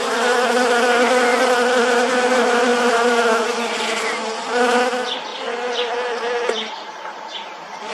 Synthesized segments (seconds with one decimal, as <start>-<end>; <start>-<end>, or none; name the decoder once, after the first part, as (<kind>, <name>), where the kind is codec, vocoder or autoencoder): none